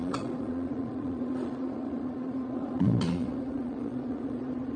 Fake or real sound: fake